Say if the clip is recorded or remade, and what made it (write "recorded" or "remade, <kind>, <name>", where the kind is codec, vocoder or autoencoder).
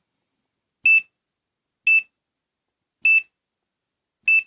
recorded